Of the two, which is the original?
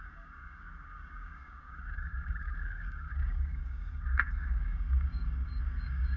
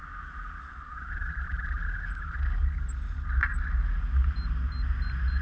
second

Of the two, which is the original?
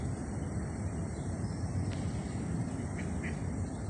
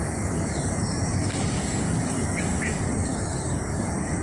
first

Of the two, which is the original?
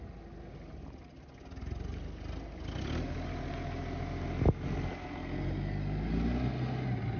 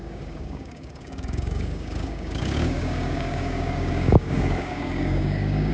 first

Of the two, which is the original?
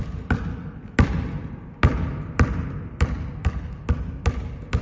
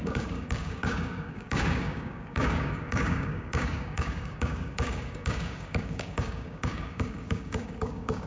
first